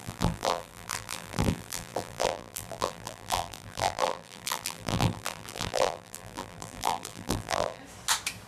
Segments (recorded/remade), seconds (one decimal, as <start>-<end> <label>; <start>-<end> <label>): 0.0-7.8 remade; 7.8-8.5 recorded